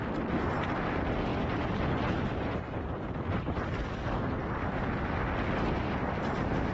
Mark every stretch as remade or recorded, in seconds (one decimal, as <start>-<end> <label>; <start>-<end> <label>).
0.0-1.3 recorded; 1.3-5.3 remade; 5.3-6.7 recorded